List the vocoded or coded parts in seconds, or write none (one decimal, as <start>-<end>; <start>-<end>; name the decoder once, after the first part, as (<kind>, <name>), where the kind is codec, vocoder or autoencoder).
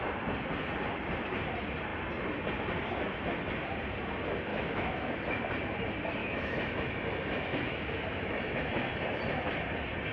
4.5-5.1 (autoencoder, DAC-VAE); 6.2-6.9; 7.5-8.9